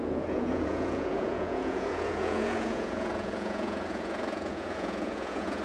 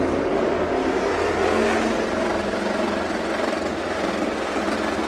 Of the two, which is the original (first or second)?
second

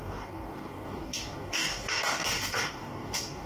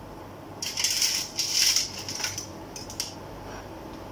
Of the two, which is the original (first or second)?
second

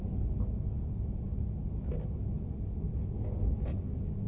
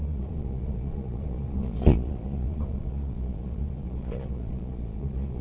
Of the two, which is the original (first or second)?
first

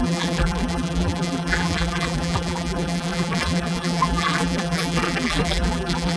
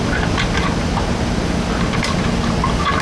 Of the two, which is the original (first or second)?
second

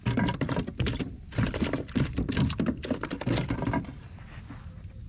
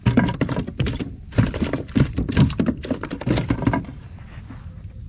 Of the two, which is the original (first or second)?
first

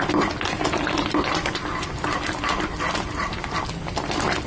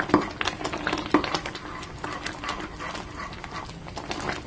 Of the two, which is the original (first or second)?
second